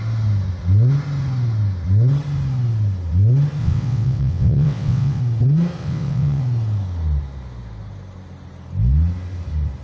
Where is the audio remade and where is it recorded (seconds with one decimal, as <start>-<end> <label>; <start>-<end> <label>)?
0.0-3.6 recorded; 3.6-5.2 remade; 5.2-5.8 recorded; 5.8-6.4 remade; 6.4-9.8 recorded